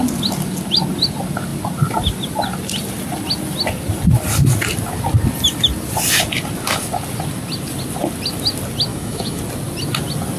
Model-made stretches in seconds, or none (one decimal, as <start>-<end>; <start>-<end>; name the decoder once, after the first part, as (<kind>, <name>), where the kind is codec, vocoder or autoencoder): 8.9-9.4 (autoencoder, DAC-VAE)